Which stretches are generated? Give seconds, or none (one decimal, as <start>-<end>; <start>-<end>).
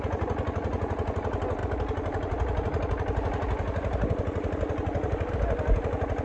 none